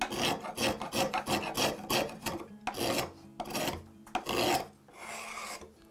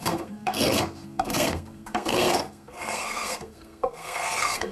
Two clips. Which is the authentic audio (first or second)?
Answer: first